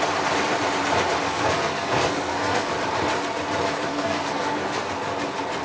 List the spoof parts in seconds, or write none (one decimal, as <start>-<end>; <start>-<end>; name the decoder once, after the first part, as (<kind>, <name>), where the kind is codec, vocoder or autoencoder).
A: 1.3-2.7 (codec, SNAC); 3.9-4.9

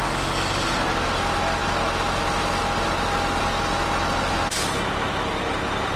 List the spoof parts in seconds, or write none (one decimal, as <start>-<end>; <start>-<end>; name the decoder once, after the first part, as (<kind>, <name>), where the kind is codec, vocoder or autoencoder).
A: none

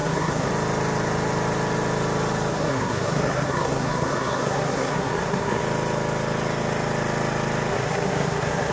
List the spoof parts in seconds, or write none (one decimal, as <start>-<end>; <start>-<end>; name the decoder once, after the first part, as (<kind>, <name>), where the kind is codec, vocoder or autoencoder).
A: 0.0-0.5 (codec, SNAC); 2.5-5.6; 7.7-8.7

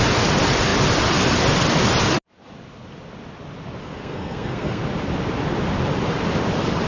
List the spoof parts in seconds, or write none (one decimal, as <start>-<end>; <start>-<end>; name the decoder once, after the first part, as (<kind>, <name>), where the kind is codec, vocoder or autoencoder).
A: 3.8-4.8 (codec, SNAC)

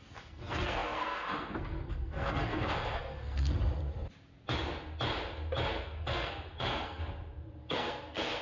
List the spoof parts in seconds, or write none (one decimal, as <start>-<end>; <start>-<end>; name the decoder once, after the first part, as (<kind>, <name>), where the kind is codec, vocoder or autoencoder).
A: 0.0-3.5 (codec, SNAC); 5.7-7.0; 7.7-8.4

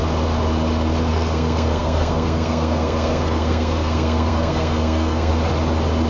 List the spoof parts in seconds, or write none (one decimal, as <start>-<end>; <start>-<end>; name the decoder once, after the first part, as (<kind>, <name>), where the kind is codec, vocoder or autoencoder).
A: 1.1-5.3 (codec, SNAC)